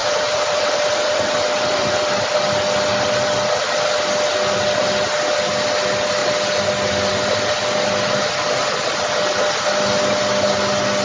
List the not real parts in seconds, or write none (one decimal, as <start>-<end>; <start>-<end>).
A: 0.0-2.3